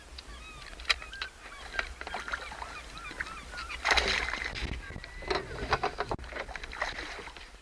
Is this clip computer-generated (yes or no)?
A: no